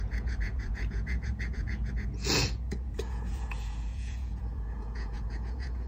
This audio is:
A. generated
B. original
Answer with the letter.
A